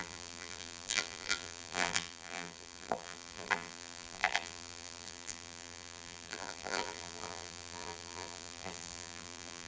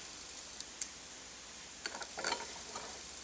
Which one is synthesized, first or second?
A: first